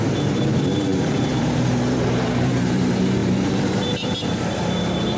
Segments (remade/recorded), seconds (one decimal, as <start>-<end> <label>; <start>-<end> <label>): 0.0-5.2 remade